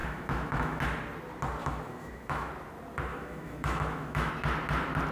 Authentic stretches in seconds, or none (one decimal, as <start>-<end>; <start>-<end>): 0.8-1.6; 2.5-3.1; 4.3-5.1